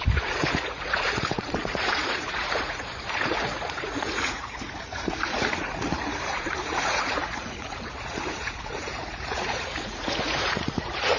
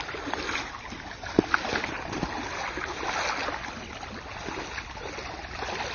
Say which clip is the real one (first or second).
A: second